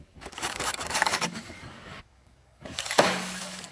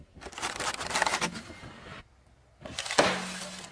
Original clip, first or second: second